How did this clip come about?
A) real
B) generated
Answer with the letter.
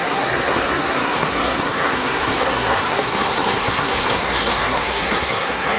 B